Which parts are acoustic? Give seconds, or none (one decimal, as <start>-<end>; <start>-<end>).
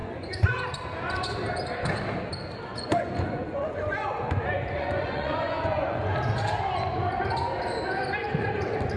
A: 0.6-2.7; 6.1-9.0